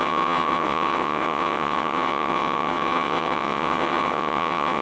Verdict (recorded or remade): remade